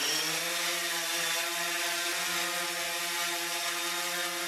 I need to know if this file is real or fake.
real